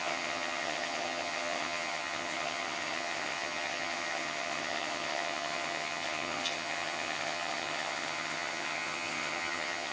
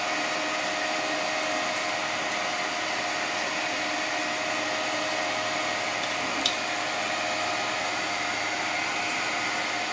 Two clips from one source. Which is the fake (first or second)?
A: first